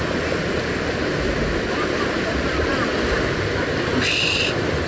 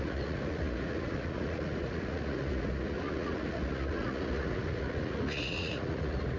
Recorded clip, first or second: first